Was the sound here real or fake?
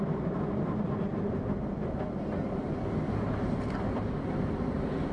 real